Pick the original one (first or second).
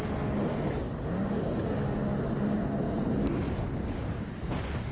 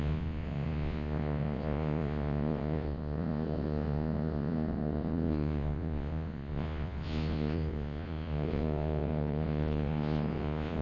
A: first